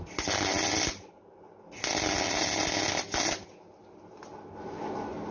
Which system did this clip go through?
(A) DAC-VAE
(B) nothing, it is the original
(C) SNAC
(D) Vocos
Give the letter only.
B